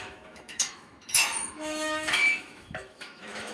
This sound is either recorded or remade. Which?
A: remade